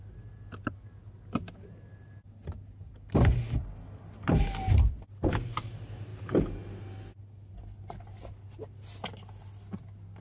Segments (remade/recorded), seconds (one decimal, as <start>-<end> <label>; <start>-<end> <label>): 0.0-10.2 recorded